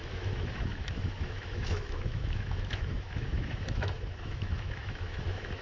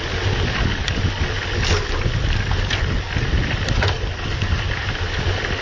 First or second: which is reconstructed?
first